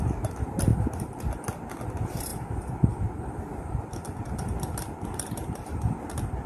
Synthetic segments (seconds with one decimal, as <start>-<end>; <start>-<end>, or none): 0.7-1.4; 2.3-5.6